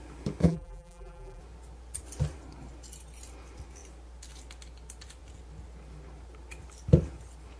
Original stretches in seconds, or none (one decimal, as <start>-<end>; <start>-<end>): 0.0-0.4; 1.4-7.6